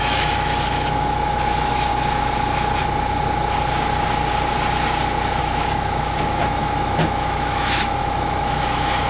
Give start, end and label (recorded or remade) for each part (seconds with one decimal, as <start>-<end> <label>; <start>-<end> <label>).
0.0-1.9 remade; 1.9-5.4 recorded; 5.4-9.1 remade